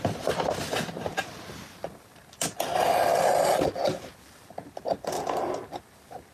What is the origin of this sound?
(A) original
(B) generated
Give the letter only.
B